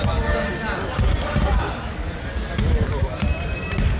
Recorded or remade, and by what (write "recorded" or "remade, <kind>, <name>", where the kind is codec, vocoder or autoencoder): recorded